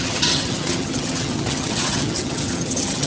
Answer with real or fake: fake